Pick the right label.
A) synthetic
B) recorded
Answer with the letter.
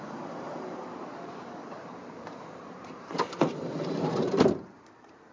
A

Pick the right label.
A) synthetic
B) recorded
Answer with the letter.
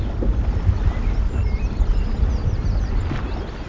B